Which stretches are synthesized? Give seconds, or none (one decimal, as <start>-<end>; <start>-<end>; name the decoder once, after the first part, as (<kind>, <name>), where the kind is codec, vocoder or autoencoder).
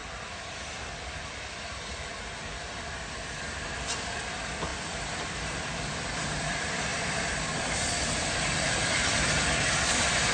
1.2-10.3 (vocoder, BigVGAN v2)